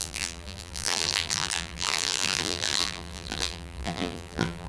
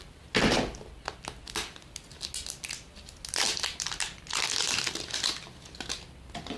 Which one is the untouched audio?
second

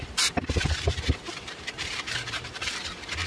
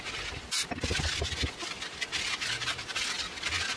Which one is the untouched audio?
second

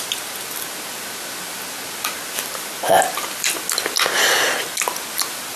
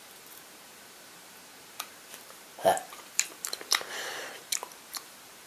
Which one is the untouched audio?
first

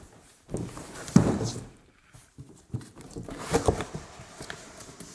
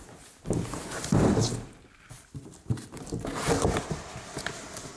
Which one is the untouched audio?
second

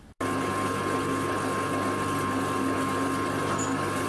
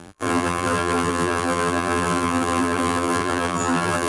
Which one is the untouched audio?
first